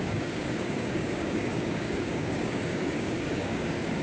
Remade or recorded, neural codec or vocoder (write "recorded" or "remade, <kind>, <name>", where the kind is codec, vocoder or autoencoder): remade, codec, DAC